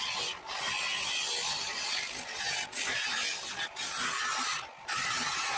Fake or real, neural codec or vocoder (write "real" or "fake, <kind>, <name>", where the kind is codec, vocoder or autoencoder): real